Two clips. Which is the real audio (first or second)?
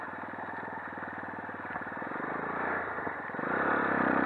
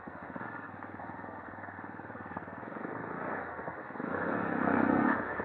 first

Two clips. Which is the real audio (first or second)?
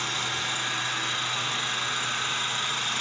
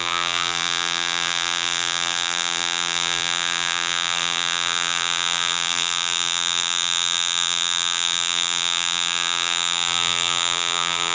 first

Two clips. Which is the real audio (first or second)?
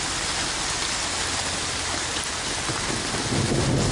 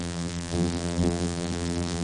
first